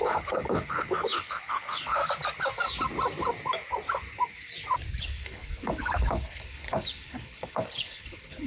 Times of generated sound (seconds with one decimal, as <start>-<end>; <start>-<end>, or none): 0.0-2.0; 5.0-8.5

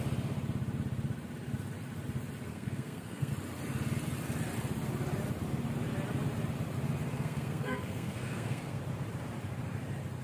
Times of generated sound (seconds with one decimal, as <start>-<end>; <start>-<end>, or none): 2.5-3.3; 7.1-8.8

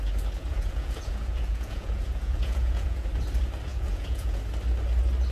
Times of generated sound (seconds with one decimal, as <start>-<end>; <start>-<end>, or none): 0.5-3.1; 3.7-4.4

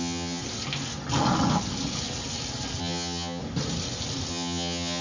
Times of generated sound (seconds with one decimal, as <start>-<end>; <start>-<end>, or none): 0.0-0.4; 2.8-3.4; 4.3-5.0

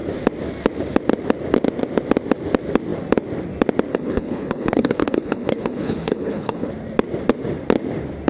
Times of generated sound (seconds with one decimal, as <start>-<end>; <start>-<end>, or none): 3.9-6.7